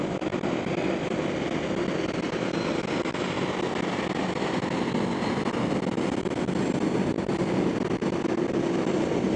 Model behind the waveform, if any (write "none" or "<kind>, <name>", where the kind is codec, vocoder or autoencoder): none